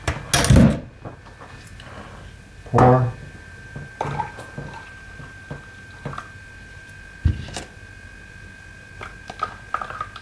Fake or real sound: real